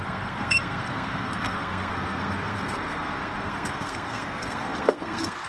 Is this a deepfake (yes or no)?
yes